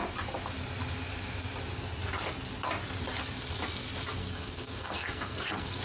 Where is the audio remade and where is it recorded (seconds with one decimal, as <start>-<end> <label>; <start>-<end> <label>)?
0.0-4.2 recorded; 4.2-5.8 remade